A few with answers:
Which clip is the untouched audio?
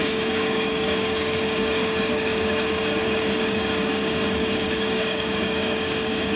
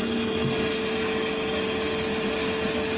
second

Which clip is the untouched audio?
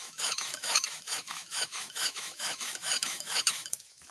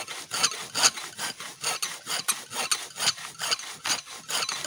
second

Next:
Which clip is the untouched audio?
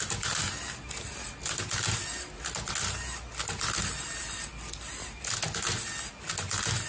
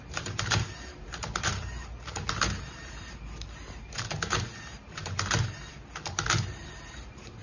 first